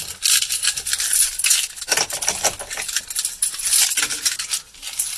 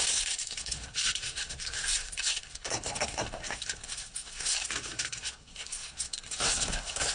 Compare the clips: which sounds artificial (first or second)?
second